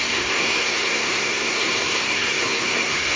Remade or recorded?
remade